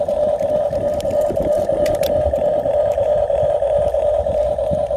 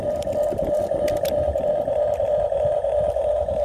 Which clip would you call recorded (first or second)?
second